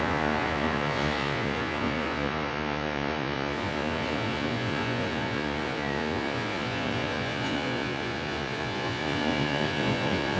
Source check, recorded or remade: remade